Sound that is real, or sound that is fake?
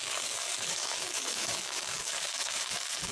fake